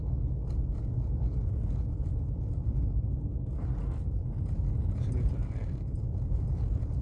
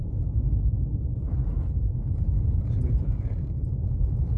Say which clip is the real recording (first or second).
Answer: first